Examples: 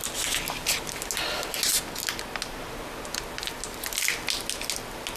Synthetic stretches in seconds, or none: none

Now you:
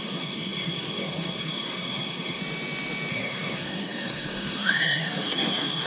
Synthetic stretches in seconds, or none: 0.0-2.4 (codec, SNAC); 3.1-5.9

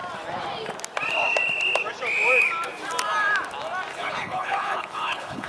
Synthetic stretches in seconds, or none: 3.9-5.5 (codec, HILCodec)

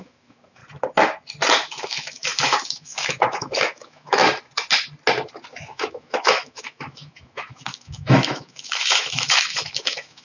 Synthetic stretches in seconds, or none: 0.0-0.6 (autoencoder, DAC-VAE); 1.7-4.2; 5.5-10.2

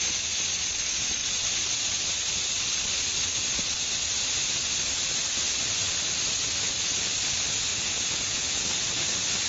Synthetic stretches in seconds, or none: 7.7-8.6 (vocoder, Vocos)

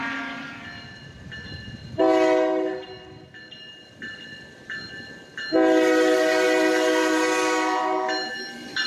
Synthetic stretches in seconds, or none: none

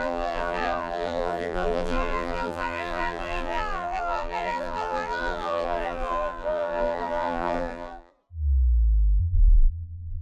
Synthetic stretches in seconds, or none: 0.0-8.1 (vocoder, BigVGAN v2); 9.2-10.2

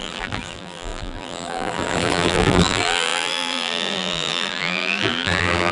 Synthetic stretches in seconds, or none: 0.0-5.7 (vocoder, BigVGAN v2)